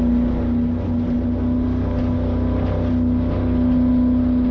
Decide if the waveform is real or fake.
real